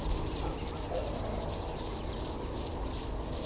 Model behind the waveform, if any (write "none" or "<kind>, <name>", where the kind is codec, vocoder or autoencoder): none